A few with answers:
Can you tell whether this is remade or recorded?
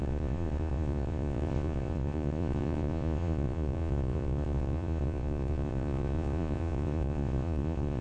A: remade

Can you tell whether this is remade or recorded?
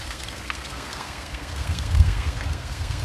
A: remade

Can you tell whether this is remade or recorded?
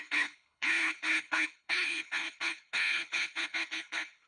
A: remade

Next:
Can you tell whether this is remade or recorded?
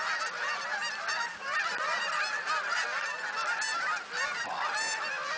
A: recorded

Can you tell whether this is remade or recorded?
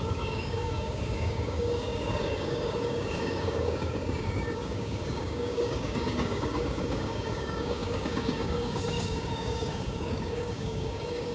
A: remade